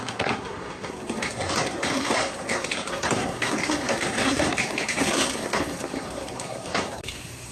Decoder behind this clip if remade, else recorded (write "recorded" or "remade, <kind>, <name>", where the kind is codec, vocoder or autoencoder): remade, codec, SNAC